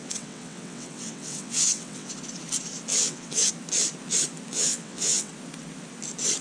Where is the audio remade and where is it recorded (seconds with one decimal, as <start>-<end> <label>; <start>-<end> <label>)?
0.0-2.1 remade; 2.1-2.9 recorded; 2.9-3.5 remade; 3.5-4.5 recorded; 4.5-5.3 remade; 5.3-6.4 recorded